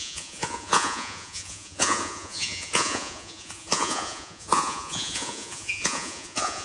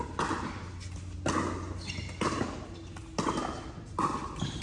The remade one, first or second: first